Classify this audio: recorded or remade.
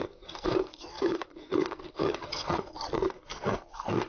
remade